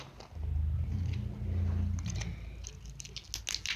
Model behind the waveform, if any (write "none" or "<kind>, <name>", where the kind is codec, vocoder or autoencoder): none